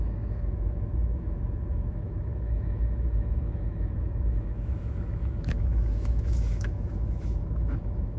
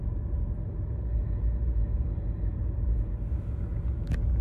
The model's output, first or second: first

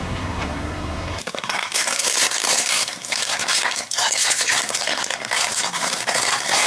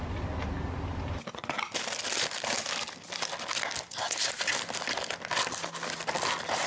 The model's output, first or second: first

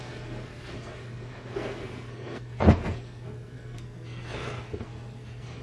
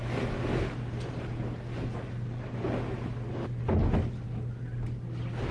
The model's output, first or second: first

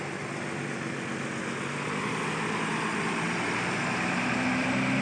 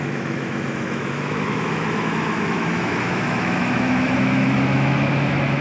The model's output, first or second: second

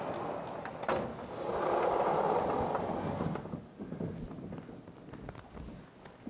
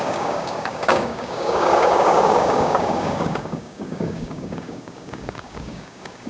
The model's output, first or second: second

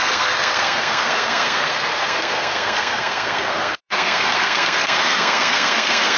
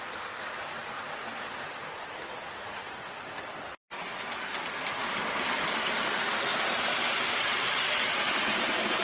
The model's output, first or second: first